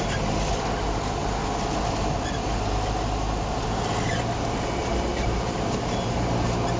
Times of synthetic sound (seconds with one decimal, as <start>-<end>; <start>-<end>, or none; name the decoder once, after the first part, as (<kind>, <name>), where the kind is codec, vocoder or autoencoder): 4.8-5.9 (vocoder, BigVGAN v2)